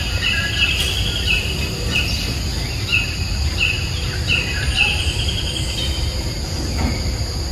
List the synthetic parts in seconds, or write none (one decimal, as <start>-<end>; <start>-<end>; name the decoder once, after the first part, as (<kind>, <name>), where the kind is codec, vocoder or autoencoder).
none